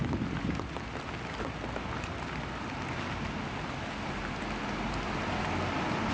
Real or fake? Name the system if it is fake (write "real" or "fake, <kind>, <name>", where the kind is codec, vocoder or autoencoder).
real